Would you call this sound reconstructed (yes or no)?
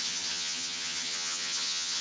yes